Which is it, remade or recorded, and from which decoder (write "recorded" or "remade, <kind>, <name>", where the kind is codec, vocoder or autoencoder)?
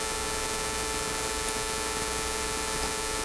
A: recorded